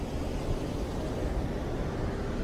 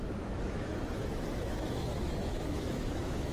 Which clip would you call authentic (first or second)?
first